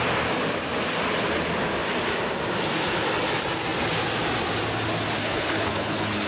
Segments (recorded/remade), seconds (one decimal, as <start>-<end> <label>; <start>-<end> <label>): 0.0-5.2 recorded; 5.2-6.3 remade